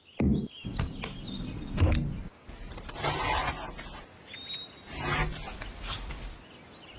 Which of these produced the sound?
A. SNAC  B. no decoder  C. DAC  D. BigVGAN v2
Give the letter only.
B